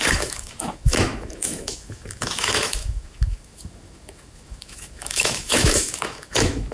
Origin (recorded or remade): remade